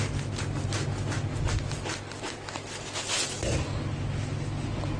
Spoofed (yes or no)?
no